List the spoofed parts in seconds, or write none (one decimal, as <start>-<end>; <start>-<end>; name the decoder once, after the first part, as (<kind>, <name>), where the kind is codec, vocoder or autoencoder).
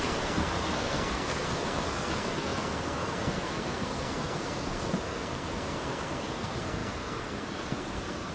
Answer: 0.0-8.3 (codec, SNAC)